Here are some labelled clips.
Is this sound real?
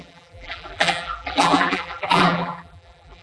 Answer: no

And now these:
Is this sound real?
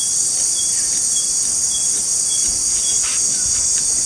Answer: no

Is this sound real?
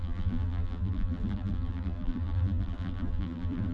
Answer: no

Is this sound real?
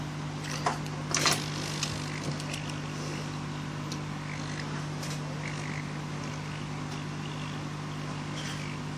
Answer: yes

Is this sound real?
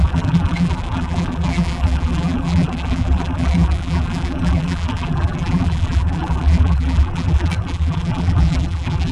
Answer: no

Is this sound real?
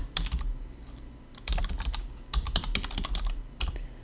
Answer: no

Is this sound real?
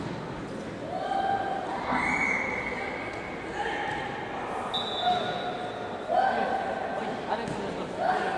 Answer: yes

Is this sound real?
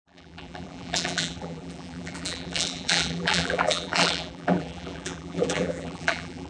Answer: no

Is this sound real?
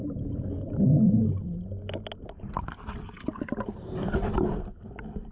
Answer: yes